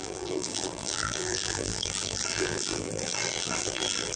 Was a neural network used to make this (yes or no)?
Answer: yes